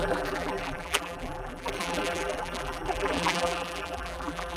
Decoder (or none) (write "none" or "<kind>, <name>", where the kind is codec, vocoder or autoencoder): vocoder, BigVGAN v2